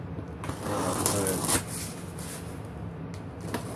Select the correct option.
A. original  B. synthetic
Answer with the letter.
A